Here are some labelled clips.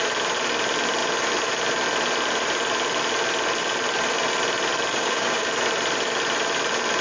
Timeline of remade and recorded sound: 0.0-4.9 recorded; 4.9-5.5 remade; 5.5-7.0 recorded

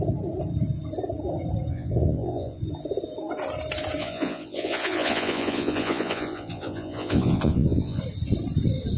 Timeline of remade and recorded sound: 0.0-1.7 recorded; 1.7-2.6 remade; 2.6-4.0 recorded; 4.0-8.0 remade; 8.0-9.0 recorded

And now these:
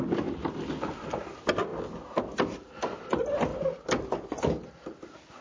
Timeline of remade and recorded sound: 0.0-5.4 recorded